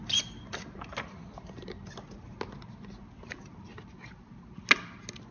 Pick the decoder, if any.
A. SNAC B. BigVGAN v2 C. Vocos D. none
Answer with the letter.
D